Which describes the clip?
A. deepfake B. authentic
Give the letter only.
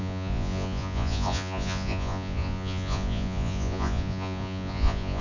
A